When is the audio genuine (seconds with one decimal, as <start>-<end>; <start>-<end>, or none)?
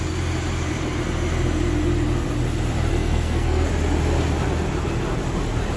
0.0-2.9; 3.7-5.8